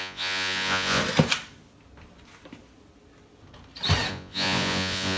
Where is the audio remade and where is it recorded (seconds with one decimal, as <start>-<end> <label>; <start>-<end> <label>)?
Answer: 0.0-1.0 remade; 1.0-4.1 recorded; 4.1-5.2 remade